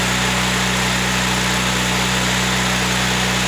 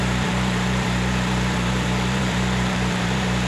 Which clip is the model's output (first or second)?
second